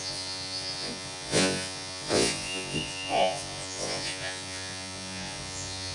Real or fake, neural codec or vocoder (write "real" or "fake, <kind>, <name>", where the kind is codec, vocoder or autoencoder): fake, vocoder, Vocos